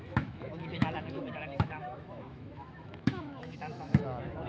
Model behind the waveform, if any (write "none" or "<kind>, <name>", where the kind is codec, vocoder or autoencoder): autoencoder, DAC-VAE